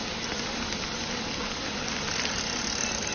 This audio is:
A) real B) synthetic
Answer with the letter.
A